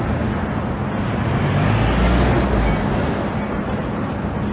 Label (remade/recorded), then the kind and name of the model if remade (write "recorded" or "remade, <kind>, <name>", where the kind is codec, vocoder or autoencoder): recorded